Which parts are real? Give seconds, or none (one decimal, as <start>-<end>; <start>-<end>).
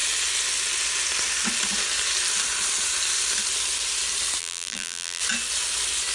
0.0-4.4; 5.2-6.1